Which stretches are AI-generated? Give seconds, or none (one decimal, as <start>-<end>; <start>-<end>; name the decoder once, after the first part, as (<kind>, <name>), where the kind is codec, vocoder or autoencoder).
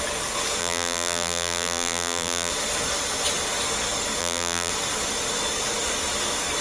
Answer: 0.6-2.5 (vocoder, BigVGAN v2); 4.2-4.7